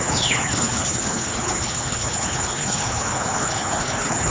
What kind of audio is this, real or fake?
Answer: fake